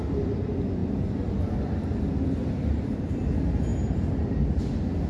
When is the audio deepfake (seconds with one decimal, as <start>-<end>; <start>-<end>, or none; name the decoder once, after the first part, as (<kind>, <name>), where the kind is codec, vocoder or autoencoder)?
0.8-3.3 (vocoder, BigVGAN v2)